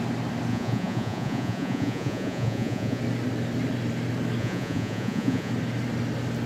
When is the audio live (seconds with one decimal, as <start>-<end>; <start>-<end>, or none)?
0.0-0.5; 3.0-4.4; 5.5-6.5